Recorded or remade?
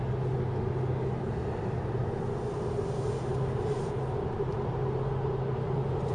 recorded